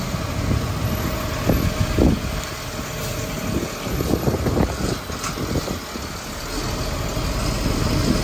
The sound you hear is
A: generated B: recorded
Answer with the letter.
B